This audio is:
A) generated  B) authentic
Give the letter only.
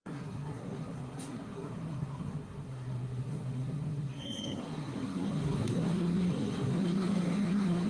A